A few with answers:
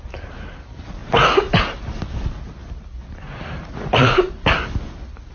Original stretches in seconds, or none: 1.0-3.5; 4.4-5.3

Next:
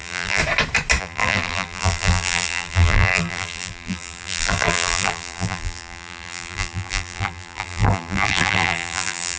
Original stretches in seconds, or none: 0.4-1.0

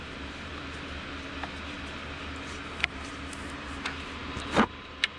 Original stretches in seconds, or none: 0.5-2.3